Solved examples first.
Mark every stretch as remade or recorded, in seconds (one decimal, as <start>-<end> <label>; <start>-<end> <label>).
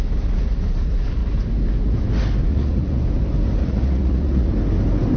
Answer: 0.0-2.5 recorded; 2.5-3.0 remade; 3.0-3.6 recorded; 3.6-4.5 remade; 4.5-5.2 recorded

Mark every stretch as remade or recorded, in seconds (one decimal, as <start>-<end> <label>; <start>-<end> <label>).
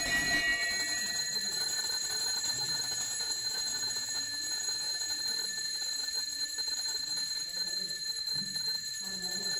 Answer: 0.0-2.5 recorded; 2.5-5.2 remade; 5.2-9.6 recorded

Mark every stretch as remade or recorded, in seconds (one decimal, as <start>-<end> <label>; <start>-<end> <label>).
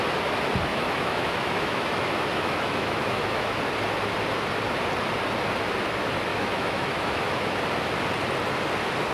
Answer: 0.0-0.7 recorded; 0.7-3.6 remade; 3.6-6.3 recorded; 6.3-7.6 remade; 7.6-9.1 recorded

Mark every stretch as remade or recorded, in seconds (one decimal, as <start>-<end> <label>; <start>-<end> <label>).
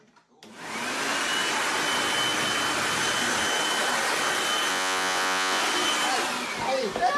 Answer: 0.0-4.7 recorded; 4.7-5.6 remade; 5.6-7.2 recorded